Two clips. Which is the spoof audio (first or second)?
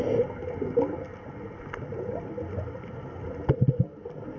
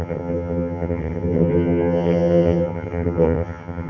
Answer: second